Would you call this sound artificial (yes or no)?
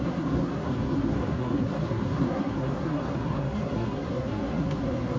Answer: yes